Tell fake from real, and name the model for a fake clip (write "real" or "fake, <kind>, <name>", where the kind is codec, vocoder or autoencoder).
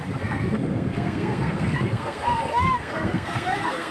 fake, codec, SNAC